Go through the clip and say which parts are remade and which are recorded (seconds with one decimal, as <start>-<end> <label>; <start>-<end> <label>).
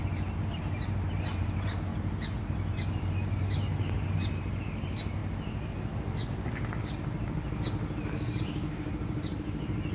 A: 0.0-5.2 remade; 5.2-8.4 recorded; 8.4-9.9 remade